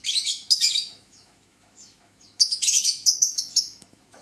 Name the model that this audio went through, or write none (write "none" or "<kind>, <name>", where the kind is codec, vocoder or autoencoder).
autoencoder, DAC-VAE